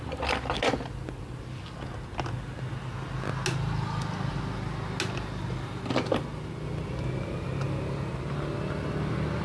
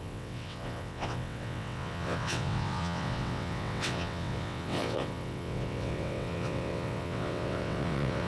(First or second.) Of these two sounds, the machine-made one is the second